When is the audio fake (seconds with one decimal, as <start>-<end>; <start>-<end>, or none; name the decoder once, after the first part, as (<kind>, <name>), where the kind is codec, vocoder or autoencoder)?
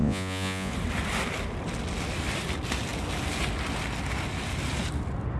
0.0-0.7 (vocoder, Vocos)